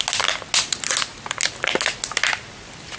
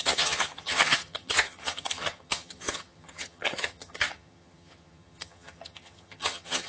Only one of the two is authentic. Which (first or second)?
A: first